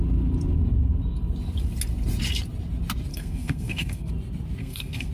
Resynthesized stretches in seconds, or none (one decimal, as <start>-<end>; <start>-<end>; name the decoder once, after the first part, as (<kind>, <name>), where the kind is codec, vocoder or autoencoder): 3.1-4.1 (codec, SNAC); 4.6-5.1